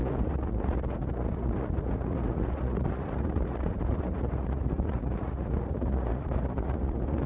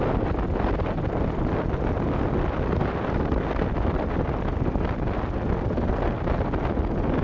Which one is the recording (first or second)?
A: second